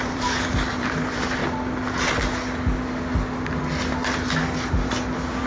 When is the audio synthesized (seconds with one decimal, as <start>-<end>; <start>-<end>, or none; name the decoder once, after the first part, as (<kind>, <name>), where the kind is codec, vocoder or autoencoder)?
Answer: 0.0-1.4 (vocoder, BigVGAN v2); 4.7-5.5